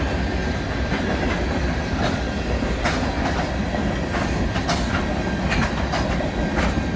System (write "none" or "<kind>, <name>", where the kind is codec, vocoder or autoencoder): none